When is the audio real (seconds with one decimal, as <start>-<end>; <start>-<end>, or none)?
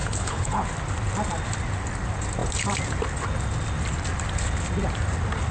0.6-5.5